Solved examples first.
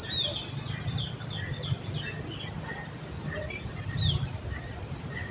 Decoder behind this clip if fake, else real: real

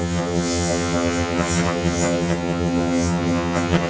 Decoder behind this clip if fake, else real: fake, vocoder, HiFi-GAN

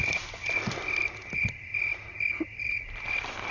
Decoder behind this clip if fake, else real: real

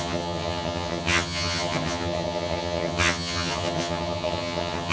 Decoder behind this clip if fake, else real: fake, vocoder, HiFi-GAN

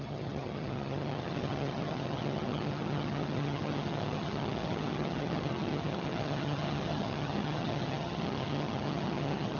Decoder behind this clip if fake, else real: fake, vocoder, HiFi-GAN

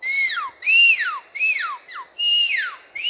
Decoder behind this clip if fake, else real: real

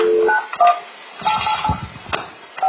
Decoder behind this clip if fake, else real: real